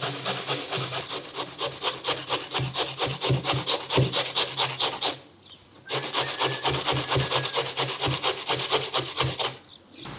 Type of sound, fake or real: real